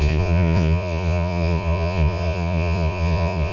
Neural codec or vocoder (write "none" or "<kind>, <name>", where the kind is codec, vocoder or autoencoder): vocoder, Vocos